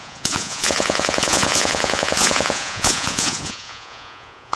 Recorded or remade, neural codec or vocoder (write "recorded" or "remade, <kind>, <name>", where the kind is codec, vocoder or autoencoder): remade, vocoder, Vocos